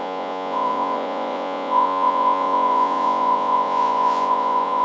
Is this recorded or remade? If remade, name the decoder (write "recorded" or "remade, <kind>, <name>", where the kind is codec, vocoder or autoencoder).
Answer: remade, vocoder, Vocos